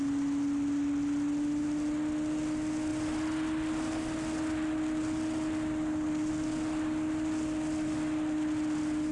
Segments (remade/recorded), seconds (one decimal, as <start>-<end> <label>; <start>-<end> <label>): 0.0-9.1 recorded